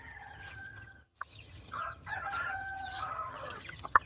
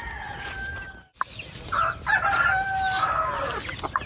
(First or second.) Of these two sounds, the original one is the second